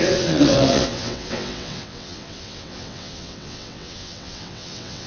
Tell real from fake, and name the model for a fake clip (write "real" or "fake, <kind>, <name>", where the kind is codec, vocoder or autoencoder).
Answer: fake, vocoder, WaveNeXt